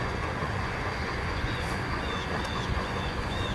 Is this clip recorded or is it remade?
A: remade